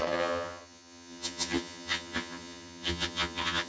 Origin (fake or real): fake